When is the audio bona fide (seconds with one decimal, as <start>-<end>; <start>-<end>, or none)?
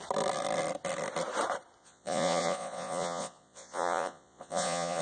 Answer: 0.0-1.8